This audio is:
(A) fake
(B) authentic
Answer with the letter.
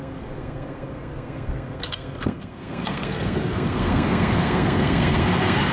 A